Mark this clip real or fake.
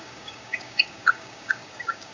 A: fake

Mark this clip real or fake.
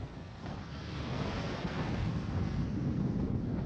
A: fake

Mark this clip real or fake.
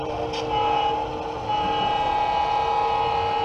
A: real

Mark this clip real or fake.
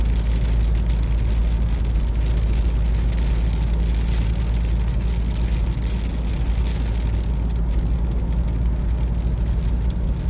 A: real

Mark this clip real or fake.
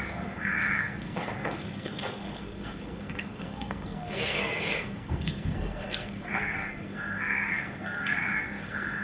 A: fake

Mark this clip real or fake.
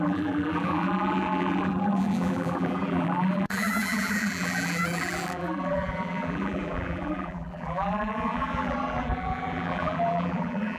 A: fake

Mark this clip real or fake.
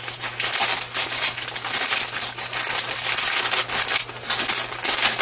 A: real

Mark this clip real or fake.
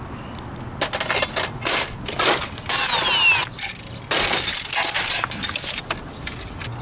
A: real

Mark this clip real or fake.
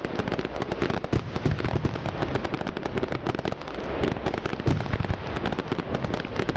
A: real